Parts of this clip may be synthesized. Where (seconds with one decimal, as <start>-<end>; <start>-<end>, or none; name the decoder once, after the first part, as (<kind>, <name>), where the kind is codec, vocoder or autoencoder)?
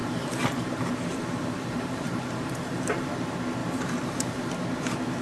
0.0-3.1 (vocoder, BigVGAN v2); 3.6-4.5